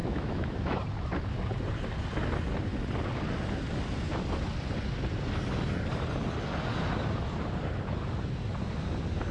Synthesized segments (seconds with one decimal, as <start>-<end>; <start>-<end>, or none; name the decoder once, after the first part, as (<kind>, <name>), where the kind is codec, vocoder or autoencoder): 0.0-0.8 (autoencoder, DAC-VAE)